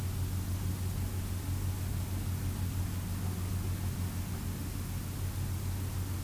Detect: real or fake real